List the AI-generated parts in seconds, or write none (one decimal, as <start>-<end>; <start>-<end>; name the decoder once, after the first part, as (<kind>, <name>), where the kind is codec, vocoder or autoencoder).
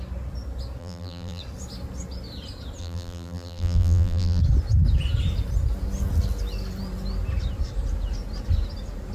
0.8-1.4 (vocoder, BigVGAN v2); 2.8-4.4